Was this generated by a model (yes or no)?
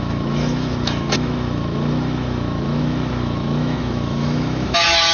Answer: yes